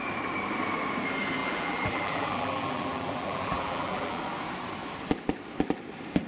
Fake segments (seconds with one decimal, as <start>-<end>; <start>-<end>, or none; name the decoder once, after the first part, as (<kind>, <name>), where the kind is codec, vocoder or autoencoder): 1.4-4.2 (vocoder, BigVGAN v2)